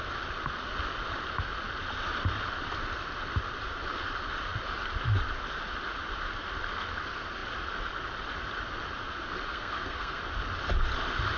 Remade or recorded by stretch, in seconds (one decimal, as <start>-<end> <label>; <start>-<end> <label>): 0.0-9.5 recorded; 9.5-10.2 remade; 10.2-11.4 recorded